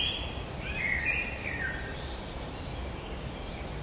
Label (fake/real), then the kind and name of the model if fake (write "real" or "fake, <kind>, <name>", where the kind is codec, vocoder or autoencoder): real